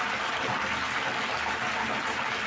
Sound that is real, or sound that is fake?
real